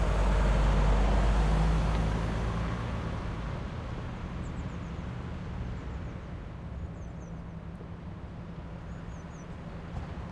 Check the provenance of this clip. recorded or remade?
recorded